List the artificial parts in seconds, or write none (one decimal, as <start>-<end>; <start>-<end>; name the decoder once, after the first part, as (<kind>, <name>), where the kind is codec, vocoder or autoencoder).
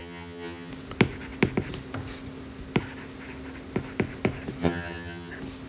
0.0-0.7 (vocoder, HiFi-GAN); 4.6-5.3